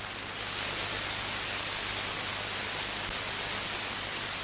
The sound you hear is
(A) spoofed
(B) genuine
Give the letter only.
B